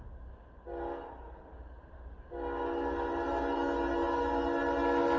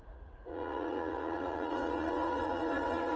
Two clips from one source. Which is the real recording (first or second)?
first